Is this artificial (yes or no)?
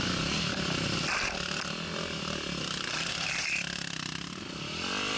no